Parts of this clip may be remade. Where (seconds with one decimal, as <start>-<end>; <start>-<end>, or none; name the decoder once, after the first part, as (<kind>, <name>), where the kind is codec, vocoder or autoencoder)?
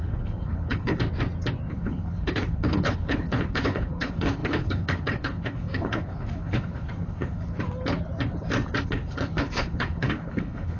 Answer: 0.0-1.0 (codec, HILCodec); 1.7-7.5; 8.8-10.8